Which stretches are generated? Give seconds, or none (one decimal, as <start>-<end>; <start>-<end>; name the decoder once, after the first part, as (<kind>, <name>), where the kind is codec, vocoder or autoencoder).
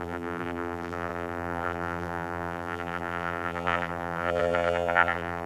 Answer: 0.0-5.5 (vocoder, BigVGAN v2)